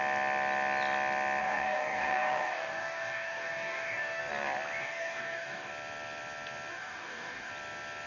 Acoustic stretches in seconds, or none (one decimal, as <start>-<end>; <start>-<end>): 0.0-1.4; 4.2-4.8; 5.7-6.7; 7.5-8.1